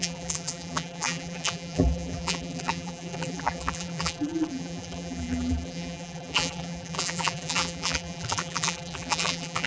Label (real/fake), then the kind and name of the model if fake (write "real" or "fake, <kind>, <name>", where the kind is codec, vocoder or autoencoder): fake, vocoder, BigVGAN v2